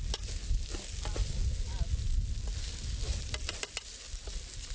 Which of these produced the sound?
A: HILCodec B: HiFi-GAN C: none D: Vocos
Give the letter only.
C